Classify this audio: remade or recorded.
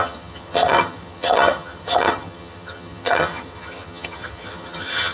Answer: remade